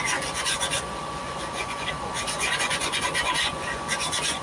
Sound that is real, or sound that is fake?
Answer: fake